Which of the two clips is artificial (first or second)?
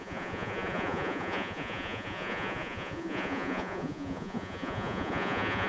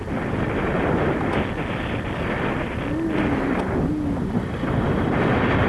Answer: first